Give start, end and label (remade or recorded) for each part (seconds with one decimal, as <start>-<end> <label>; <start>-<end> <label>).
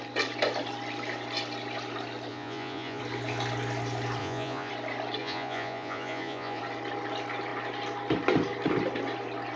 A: 0.0-2.3 recorded; 2.3-3.0 remade; 3.0-4.2 recorded; 4.2-4.7 remade; 4.7-5.2 recorded; 5.2-6.6 remade; 6.6-9.6 recorded